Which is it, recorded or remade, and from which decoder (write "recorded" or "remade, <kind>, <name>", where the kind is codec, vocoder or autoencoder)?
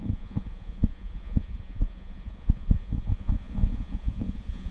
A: remade, vocoder, Vocos